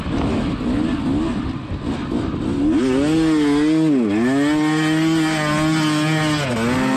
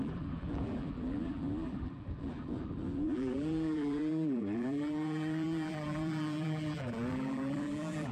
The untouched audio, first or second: first